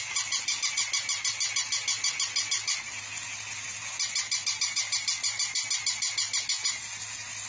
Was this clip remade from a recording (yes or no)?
no